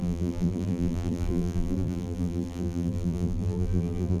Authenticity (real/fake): fake